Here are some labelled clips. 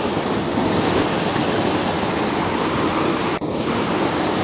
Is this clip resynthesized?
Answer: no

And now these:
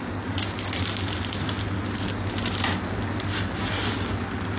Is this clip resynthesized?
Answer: no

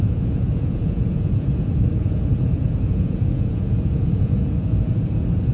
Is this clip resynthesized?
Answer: yes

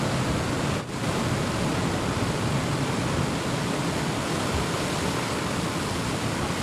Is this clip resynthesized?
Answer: no